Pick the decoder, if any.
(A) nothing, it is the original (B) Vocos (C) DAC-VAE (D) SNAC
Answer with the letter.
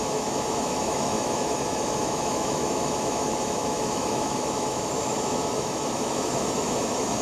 C